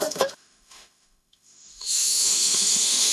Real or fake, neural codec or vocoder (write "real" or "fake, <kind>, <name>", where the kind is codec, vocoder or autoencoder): fake, autoencoder, DAC-VAE